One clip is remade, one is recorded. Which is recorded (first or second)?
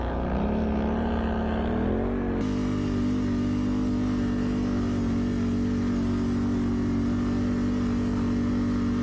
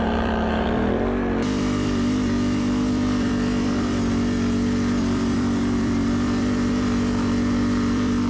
first